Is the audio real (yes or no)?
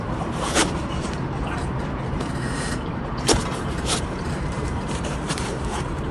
no